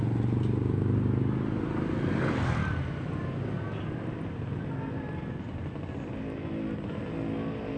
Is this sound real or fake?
real